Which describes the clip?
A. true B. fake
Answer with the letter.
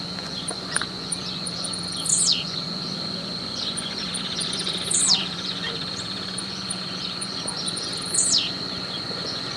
B